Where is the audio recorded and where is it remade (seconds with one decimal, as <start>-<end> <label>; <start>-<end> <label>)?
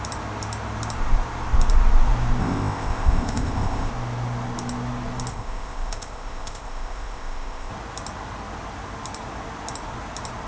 0.0-2.4 recorded; 2.4-3.9 remade; 3.9-5.3 recorded; 5.3-7.7 remade; 7.7-10.5 recorded